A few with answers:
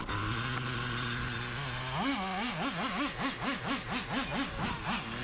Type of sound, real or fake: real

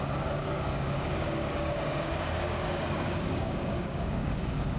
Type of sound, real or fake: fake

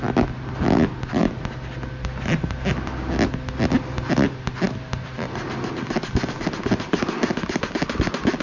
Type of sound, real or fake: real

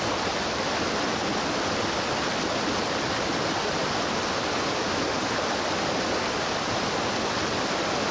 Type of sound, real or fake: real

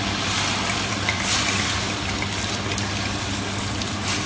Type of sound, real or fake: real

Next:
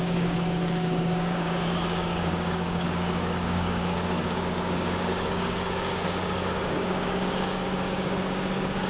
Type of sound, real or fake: fake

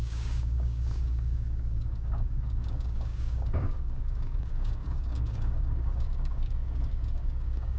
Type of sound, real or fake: fake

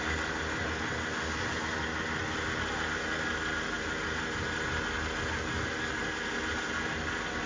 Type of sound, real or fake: real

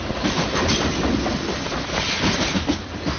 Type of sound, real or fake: real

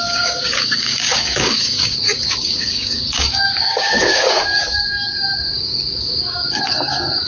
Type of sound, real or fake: fake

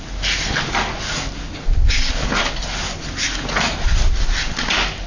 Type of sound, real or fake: real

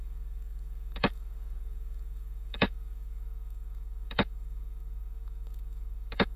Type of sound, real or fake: fake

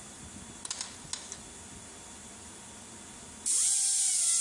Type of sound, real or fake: real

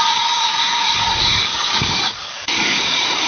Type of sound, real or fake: fake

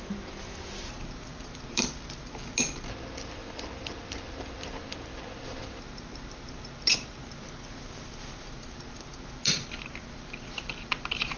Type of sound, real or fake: real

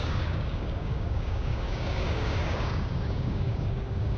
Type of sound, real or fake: fake